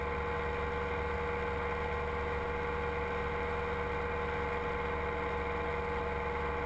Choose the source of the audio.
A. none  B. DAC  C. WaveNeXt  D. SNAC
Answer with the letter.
A